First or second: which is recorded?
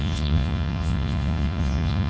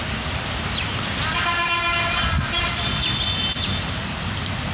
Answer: second